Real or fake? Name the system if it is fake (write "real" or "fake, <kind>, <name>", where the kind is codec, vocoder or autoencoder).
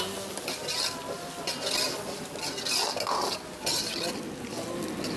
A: real